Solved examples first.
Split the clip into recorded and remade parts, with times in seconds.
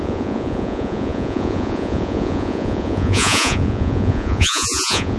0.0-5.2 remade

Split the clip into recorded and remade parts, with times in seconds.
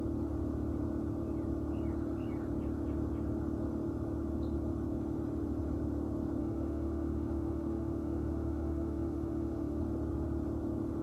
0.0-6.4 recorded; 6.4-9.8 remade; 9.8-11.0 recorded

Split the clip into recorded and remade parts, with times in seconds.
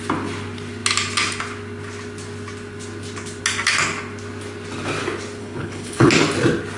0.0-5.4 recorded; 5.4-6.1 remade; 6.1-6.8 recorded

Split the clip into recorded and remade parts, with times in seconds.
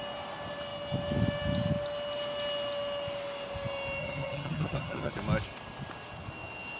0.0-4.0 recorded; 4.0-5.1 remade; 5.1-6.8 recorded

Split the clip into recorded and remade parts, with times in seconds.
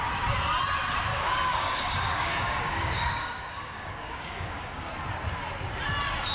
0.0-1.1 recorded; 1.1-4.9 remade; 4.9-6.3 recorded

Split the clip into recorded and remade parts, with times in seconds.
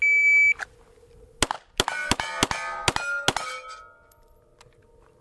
0.0-5.2 recorded